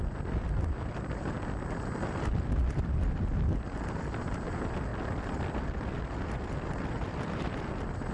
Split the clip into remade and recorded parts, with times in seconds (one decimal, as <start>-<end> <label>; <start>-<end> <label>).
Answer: 0.0-2.6 recorded; 2.6-4.2 remade; 4.2-4.9 recorded; 4.9-8.1 remade